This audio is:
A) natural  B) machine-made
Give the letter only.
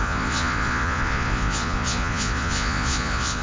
B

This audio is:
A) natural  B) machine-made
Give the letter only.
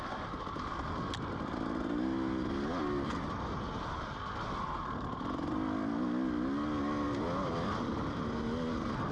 A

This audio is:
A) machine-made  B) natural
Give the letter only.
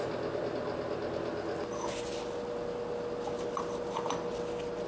B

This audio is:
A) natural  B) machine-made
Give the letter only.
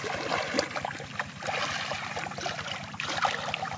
A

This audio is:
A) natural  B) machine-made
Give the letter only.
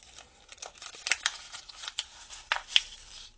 A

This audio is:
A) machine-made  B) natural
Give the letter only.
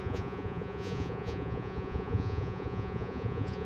A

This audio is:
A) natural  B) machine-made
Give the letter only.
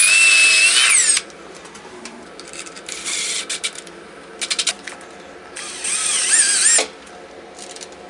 A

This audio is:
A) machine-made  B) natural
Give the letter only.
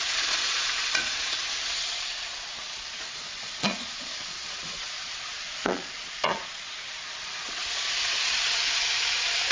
A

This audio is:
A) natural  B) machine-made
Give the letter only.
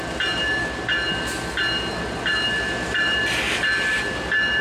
A